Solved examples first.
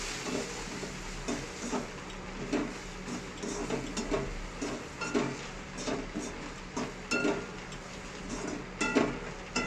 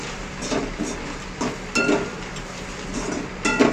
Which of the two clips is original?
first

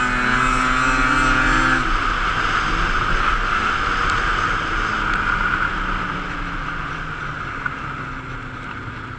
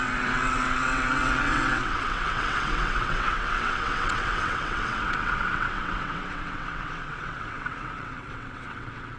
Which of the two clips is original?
first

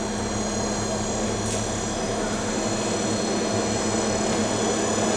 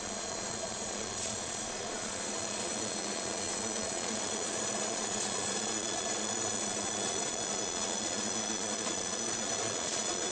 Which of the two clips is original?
first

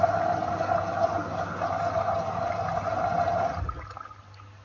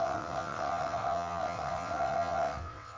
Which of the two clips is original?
first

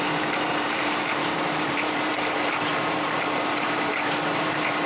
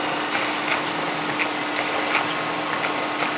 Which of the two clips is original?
second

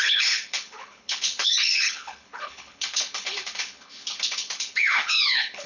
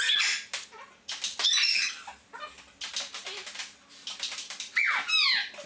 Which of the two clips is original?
second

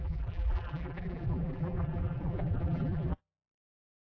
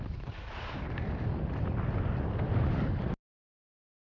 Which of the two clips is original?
second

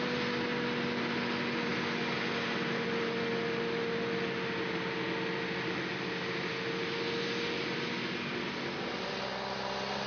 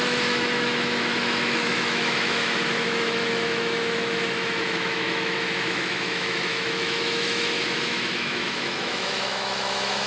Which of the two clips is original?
first